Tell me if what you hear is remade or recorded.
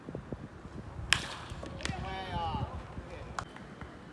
recorded